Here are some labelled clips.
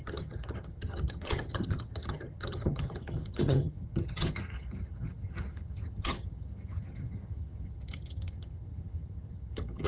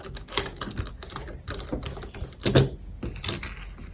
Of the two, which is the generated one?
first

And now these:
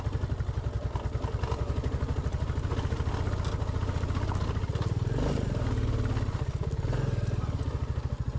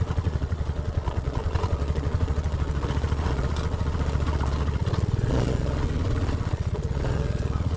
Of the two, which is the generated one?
second